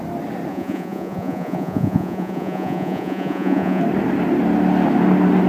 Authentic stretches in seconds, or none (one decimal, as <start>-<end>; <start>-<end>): 0.0-0.5; 3.8-5.5